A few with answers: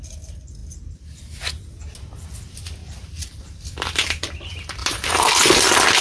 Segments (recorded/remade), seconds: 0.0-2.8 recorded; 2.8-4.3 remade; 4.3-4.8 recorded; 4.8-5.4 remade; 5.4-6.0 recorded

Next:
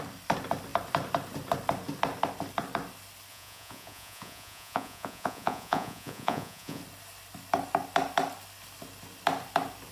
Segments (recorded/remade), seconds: 0.0-3.3 recorded; 3.3-6.8 remade; 6.8-9.9 recorded

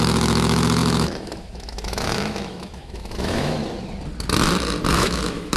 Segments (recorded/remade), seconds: 0.0-3.6 remade; 3.6-4.9 recorded; 4.9-5.6 remade

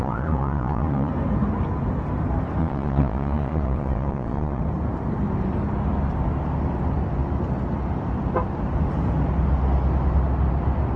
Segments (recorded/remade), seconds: 0.0-1.1 remade; 1.1-2.6 recorded; 2.6-4.6 remade; 4.6-11.0 recorded

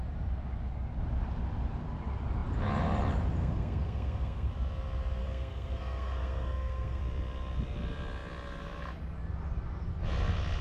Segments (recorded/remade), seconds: 0.0-3.4 recorded; 3.4-4.5 remade; 4.5-5.2 recorded; 5.2-7.0 remade; 7.0-10.6 recorded

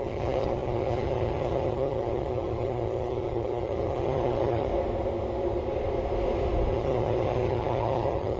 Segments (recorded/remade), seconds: 0.0-4.7 remade; 4.7-6.7 recorded; 6.7-8.4 remade

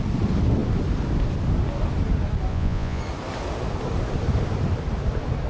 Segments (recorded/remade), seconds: 0.0-2.5 recorded; 2.5-3.0 remade; 3.0-5.5 recorded